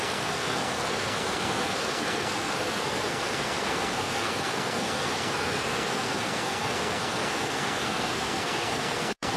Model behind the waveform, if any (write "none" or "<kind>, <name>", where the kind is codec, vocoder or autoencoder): codec, SNAC